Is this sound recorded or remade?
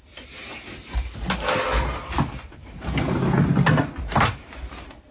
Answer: recorded